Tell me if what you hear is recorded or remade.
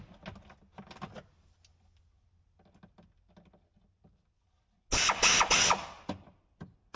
recorded